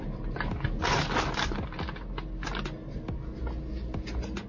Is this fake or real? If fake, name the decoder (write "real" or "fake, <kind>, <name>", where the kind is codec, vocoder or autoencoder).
real